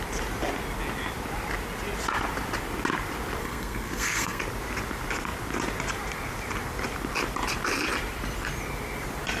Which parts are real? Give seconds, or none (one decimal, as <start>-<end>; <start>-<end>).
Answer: 0.0-3.4; 4.4-9.4